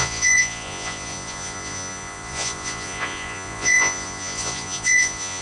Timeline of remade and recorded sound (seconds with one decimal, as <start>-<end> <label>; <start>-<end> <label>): 0.0-5.4 remade